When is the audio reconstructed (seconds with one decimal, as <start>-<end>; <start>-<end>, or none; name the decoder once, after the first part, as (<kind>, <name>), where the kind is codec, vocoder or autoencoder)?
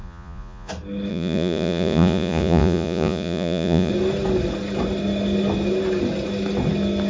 0.0-0.7 (vocoder, Vocos); 1.1-3.9